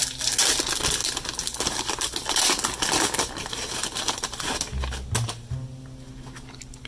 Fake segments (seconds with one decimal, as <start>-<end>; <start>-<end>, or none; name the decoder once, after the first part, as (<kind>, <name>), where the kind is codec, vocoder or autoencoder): none

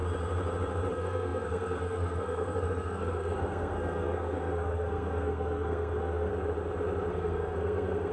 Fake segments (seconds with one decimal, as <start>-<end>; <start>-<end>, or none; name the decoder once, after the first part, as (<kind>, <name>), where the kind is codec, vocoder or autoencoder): 0.9-6.3 (codec, SNAC); 7.1-8.1

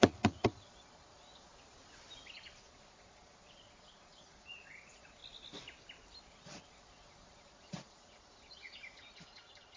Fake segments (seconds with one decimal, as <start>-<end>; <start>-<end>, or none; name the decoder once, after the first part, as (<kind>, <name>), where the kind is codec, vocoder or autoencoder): 0.0-1.5 (vocoder, Vocos); 2.3-5.2; 6.2-9.8

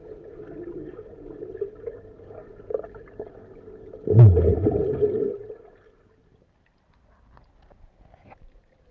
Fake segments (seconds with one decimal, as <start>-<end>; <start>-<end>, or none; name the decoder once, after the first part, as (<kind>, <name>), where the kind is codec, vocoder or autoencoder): 0.9-3.3 (vocoder, BigVGAN v2)

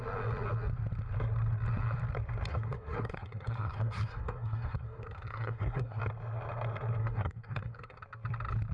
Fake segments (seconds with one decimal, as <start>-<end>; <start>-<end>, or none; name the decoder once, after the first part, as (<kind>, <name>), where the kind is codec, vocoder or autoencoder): 2.5-6.0 (codec, SNAC); 7.0-8.0

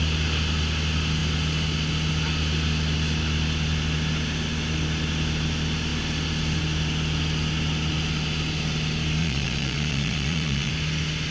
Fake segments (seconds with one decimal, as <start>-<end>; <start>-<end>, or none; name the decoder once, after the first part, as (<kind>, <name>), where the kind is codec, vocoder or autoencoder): 9.2-10.7 (vocoder, Vocos)